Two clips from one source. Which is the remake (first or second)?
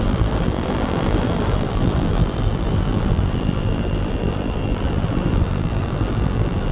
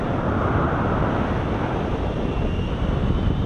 first